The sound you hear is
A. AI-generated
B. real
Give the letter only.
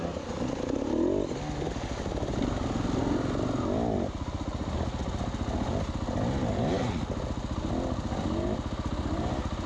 B